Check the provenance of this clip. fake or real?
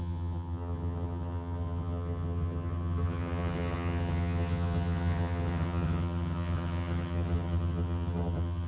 fake